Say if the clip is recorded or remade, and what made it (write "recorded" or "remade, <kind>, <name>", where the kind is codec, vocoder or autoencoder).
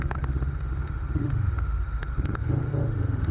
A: remade, autoencoder, DAC-VAE